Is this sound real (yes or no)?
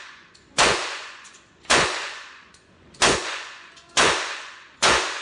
no